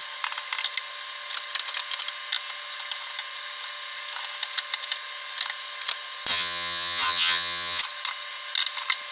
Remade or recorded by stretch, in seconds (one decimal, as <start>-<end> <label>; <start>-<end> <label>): 0.0-6.3 recorded; 6.3-7.8 remade; 7.8-9.1 recorded